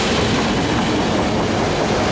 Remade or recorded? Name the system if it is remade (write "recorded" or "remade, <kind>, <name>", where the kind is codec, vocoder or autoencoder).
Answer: recorded